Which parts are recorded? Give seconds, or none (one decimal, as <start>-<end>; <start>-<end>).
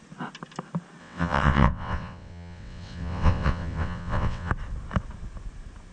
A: 0.0-1.0; 4.5-5.9